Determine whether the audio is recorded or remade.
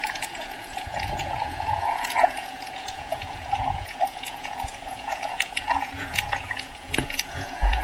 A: remade